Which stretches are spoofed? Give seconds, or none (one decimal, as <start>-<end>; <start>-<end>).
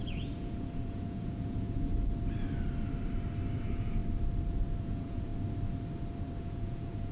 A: 0.0-1.9; 3.6-4.0; 4.8-5.3; 6.4-7.1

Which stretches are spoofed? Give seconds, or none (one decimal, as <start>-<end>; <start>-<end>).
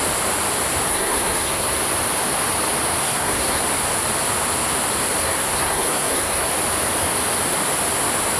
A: 0.9-1.8; 3.0-3.6; 5.2-6.5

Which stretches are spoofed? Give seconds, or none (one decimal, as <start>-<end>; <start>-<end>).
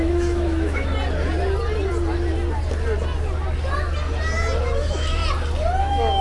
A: 0.0-0.9; 4.6-5.2; 5.8-6.2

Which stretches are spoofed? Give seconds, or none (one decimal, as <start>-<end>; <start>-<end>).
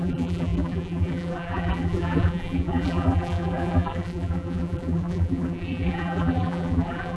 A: 0.0-7.2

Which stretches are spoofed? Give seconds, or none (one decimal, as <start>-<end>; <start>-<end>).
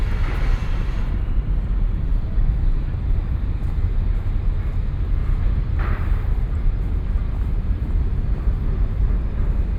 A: 0.6-4.8; 5.2-8.0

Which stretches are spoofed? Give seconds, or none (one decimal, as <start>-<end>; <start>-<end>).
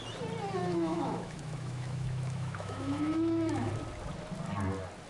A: 0.6-3.7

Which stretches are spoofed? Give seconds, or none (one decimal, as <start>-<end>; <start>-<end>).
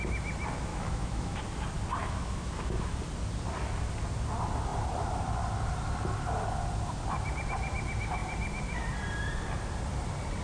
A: 0.7-1.4; 2.0-3.0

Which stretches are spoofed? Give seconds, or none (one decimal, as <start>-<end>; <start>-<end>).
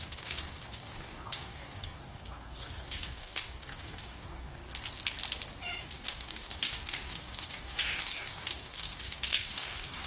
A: 0.0-4.6; 5.8-10.1